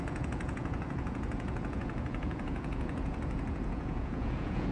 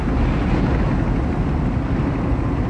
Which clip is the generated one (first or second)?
first